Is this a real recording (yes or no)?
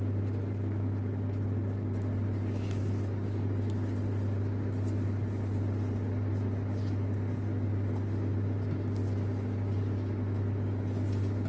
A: yes